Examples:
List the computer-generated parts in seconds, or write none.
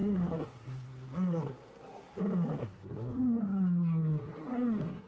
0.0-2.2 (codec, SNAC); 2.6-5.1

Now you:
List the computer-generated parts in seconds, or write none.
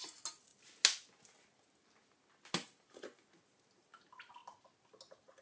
none